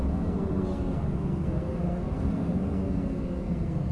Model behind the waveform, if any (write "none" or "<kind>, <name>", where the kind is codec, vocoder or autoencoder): codec, SNAC